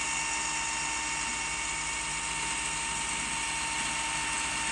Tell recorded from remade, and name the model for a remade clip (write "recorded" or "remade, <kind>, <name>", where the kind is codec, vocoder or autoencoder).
recorded